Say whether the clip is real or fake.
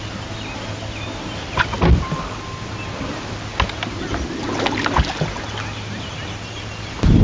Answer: real